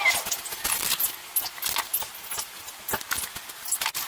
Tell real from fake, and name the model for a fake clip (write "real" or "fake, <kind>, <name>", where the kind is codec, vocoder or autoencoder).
real